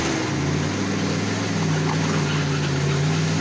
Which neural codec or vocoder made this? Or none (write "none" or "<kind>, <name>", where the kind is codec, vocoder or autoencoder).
none